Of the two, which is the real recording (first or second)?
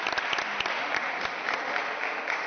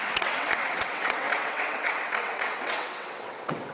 first